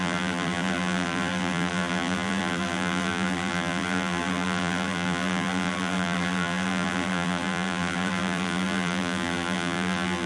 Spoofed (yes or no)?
yes